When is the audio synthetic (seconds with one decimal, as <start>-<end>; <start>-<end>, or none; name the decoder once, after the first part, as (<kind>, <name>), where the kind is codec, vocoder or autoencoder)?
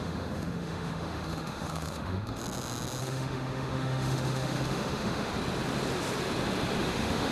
0.0-2.4 (autoencoder, DAC-VAE); 3.0-5.3; 6.8-7.3